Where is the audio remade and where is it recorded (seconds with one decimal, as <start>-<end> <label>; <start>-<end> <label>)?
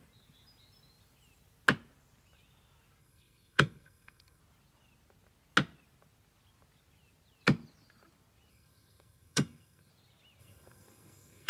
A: 0.0-3.0 recorded; 3.0-4.4 remade; 4.4-8.5 recorded; 8.5-9.9 remade; 9.9-10.4 recorded; 10.4-11.5 remade